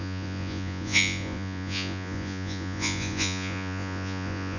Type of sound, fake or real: fake